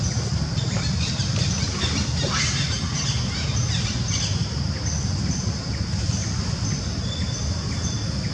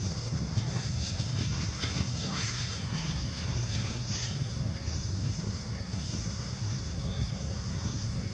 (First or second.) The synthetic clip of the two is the second